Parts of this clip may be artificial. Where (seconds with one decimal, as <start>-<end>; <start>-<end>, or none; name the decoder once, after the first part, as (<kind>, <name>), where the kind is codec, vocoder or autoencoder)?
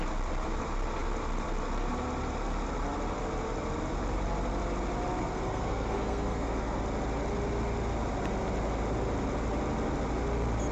5.2-6.8 (codec, SNAC)